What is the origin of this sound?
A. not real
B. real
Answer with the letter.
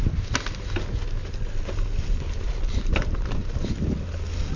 B